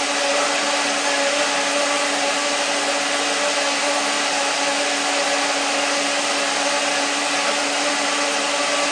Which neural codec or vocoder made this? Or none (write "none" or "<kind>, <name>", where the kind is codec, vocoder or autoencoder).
none